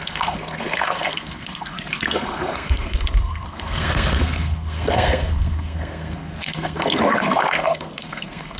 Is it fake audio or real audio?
fake